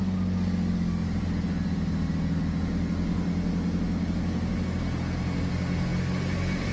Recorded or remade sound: recorded